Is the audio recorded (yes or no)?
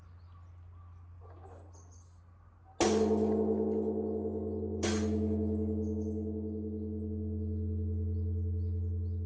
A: yes